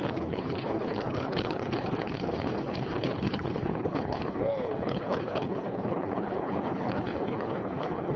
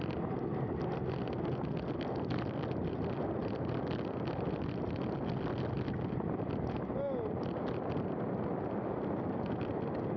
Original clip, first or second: second